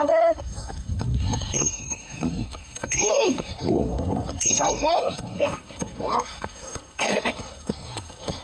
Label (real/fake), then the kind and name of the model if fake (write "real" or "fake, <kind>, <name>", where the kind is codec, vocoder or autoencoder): fake, codec, SNAC